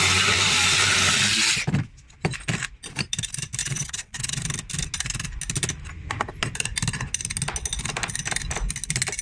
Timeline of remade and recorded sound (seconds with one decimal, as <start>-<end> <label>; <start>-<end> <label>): 0.0-3.6 recorded; 3.6-4.4 remade; 4.4-9.2 recorded